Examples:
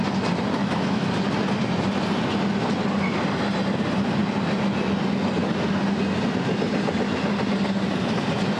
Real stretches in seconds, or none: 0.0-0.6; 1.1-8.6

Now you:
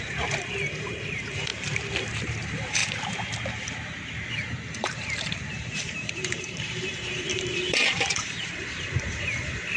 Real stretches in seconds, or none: 1.5-2.2; 2.8-4.3

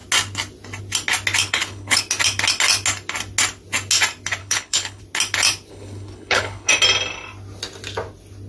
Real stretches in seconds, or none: 0.0-1.4; 2.0-4.4; 5.0-5.7; 6.7-8.5